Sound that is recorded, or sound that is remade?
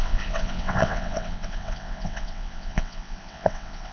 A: remade